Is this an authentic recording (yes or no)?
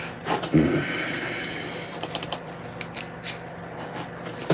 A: no